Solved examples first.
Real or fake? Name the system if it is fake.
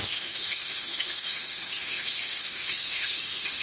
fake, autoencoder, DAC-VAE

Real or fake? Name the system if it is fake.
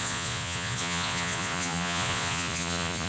fake, vocoder, Vocos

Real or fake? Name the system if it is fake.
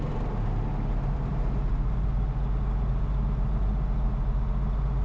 real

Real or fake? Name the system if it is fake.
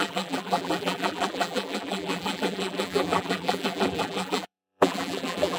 fake, vocoder, BigVGAN v2